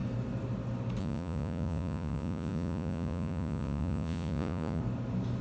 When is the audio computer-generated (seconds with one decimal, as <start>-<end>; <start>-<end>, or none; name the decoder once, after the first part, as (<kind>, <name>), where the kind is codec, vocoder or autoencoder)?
1.0-4.8 (vocoder, Vocos)